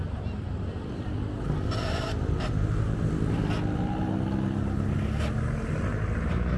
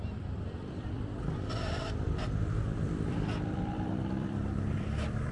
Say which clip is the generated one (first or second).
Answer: second